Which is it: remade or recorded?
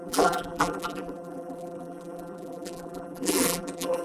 remade